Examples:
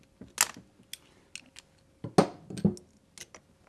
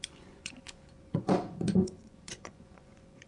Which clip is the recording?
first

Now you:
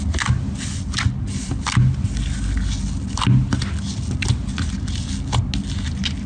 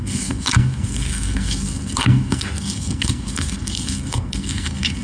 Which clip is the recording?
first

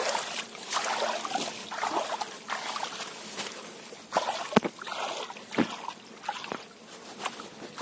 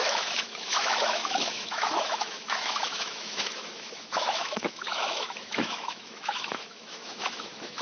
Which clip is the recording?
first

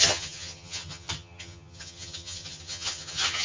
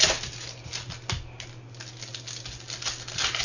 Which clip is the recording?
second